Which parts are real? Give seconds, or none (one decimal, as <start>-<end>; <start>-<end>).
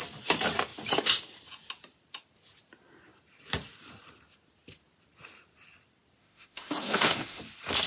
0.0-6.2; 7.4-7.9